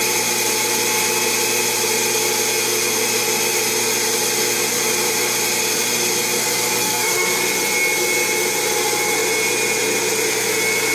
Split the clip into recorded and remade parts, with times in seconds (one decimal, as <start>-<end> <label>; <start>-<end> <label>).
0.0-6.8 recorded; 6.8-7.3 remade; 7.3-10.9 recorded